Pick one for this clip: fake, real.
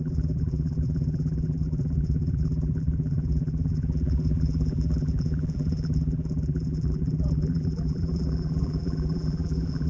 fake